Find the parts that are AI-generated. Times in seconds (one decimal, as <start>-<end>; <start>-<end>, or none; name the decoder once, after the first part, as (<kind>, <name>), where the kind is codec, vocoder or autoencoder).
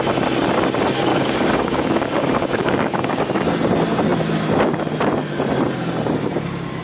1.1-3.2 (codec, DAC)